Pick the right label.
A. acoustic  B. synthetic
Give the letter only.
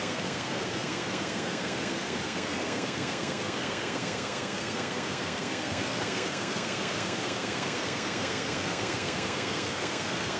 B